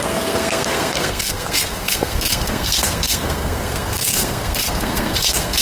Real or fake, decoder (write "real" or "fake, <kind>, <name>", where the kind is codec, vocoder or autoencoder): fake, codec, SNAC